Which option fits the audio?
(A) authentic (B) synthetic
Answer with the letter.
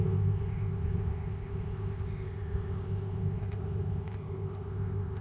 B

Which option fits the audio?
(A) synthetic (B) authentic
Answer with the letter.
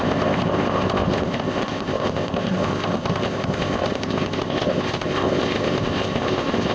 A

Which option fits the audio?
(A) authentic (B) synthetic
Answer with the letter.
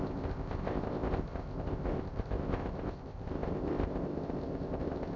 B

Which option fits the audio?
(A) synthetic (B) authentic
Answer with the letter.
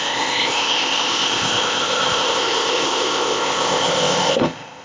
A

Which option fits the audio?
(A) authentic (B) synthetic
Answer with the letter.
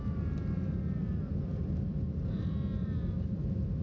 A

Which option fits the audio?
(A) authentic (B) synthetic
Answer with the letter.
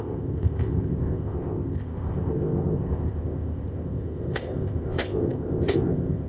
B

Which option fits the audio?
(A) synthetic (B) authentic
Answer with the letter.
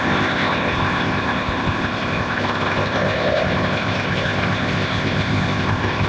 A